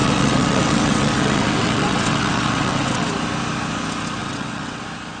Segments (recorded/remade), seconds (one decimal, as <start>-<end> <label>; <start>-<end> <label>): 0.0-3.1 remade; 3.1-4.2 recorded; 4.2-4.8 remade; 4.8-5.2 recorded